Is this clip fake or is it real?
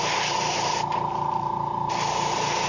fake